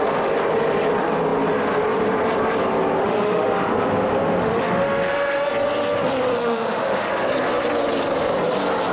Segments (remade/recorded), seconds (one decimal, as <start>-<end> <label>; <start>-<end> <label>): 0.0-3.0 recorded; 3.0-3.7 remade; 3.7-4.4 recorded; 4.4-5.5 remade; 5.5-6.4 recorded; 6.4-7.1 remade; 7.1-8.9 recorded